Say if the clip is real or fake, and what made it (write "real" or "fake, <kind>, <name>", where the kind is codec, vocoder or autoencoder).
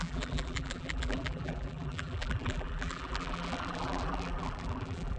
fake, vocoder, BigVGAN v2